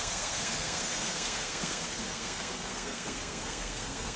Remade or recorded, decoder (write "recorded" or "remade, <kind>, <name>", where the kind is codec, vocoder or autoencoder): remade, codec, SNAC